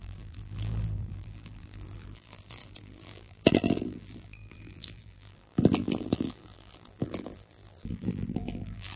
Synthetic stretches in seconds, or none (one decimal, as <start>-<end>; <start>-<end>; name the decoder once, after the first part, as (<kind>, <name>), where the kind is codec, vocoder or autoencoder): 0.0-9.0 (vocoder, BigVGAN v2)